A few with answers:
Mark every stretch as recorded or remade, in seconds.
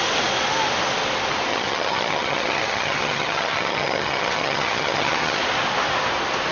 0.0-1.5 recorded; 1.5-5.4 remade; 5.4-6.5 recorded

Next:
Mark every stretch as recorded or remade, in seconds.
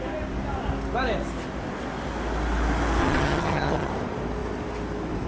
0.0-3.0 recorded; 3.0-3.9 remade; 3.9-5.3 recorded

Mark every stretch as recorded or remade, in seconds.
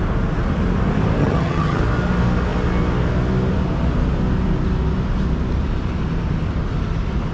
0.0-1.2 recorded; 1.2-1.8 remade; 1.8-7.3 recorded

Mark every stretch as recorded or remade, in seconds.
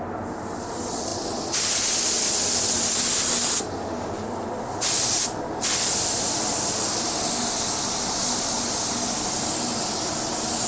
0.0-10.7 recorded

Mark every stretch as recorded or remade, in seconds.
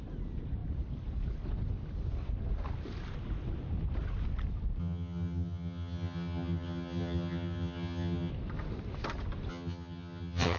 0.0-4.8 recorded; 4.8-8.3 remade; 8.3-9.5 recorded; 9.5-10.6 remade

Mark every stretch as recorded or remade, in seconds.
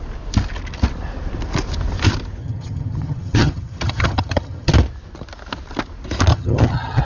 0.0-2.4 recorded; 2.4-4.7 remade; 4.7-6.3 recorded; 6.3-7.0 remade